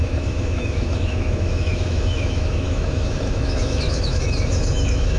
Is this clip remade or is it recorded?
remade